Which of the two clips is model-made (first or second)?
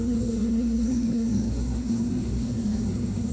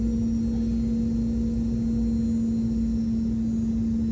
first